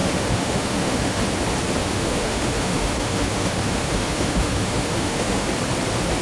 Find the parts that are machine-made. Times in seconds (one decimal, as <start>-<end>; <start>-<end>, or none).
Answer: 0.0-1.2; 1.8-5.5